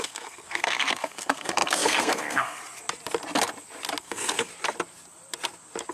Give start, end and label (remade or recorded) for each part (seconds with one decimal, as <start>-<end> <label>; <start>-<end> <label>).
0.0-2.6 remade; 2.6-4.0 recorded; 4.0-4.5 remade; 4.5-5.9 recorded